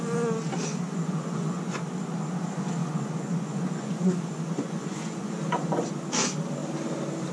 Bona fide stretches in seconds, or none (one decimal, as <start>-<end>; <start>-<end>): 0.0-0.7; 1.8-2.8; 5.3-7.3